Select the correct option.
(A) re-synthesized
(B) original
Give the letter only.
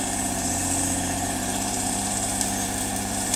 A